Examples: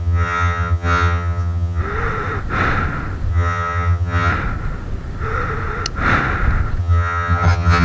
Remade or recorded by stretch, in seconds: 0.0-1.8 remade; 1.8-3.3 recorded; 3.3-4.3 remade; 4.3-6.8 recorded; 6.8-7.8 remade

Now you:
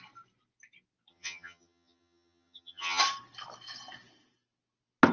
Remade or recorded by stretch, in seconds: 0.0-1.1 recorded; 1.1-3.0 remade; 3.0-5.1 recorded

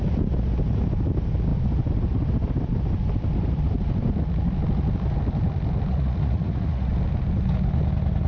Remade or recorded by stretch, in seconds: 0.0-5.9 recorded; 5.9-6.9 remade; 6.9-8.3 recorded

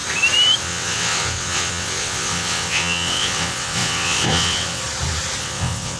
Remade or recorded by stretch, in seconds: 0.0-0.6 recorded; 0.6-4.8 remade; 4.8-5.4 recorded; 5.4-6.0 remade

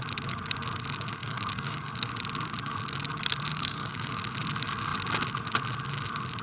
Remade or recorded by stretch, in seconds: 0.0-1.2 recorded; 1.2-2.1 remade; 2.1-3.5 recorded; 3.5-4.2 remade; 4.2-6.4 recorded

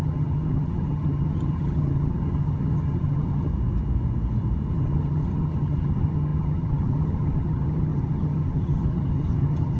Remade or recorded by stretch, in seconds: 0.0-3.5 remade; 3.5-4.7 recorded; 4.7-9.8 remade

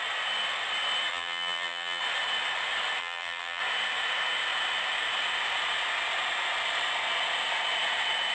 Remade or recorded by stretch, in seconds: 0.0-1.1 recorded; 1.1-2.0 remade; 2.0-3.0 recorded; 3.0-3.6 remade; 3.6-8.3 recorded